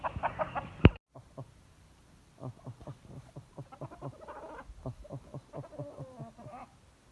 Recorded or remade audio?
recorded